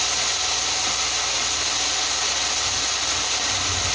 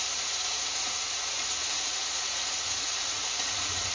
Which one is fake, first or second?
second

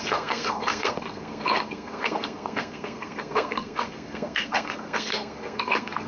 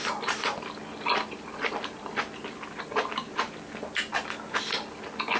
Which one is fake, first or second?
first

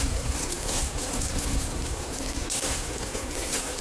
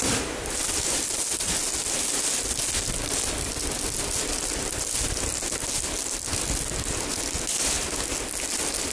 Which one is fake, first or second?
first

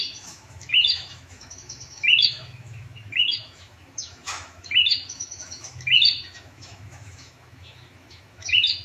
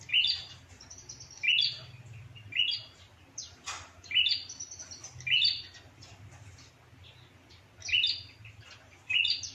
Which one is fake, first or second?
first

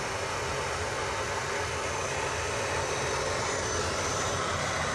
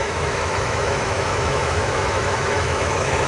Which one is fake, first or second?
second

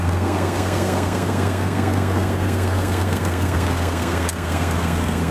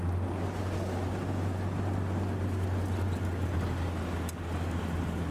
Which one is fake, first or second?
first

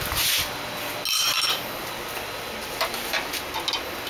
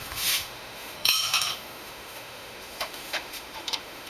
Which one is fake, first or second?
second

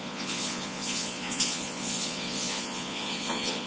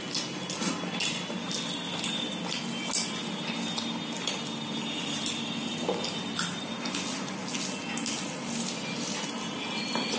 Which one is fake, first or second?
first